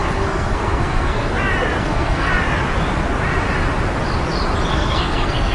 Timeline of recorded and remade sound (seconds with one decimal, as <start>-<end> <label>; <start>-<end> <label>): 0.0-1.3 remade; 1.3-1.8 recorded; 1.8-2.3 remade; 2.3-4.7 recorded; 4.7-5.5 remade